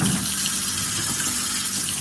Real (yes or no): yes